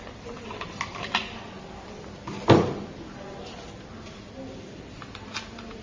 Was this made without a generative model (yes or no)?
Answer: yes